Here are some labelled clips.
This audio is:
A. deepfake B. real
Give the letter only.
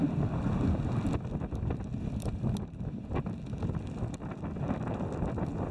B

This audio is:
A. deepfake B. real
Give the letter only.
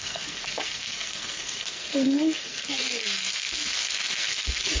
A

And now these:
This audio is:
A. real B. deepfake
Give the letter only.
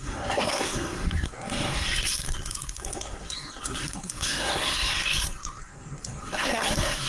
B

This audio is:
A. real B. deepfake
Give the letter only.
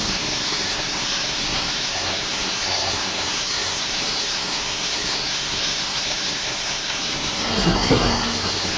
B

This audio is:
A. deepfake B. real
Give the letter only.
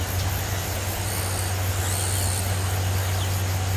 B